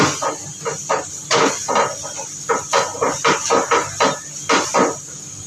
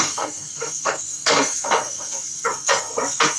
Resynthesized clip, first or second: second